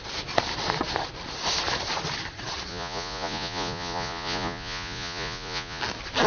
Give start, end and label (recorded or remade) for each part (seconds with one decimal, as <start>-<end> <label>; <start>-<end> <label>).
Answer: 0.0-2.7 recorded; 2.7-5.8 remade; 5.8-6.3 recorded